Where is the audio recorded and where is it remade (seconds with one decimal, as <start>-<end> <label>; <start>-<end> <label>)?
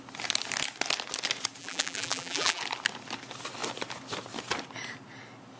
0.0-1.6 recorded; 1.6-2.6 remade; 2.6-5.6 recorded